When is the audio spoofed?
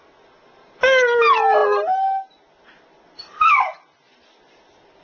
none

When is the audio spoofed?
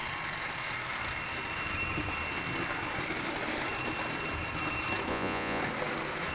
5.1-5.6 (vocoder, Vocos)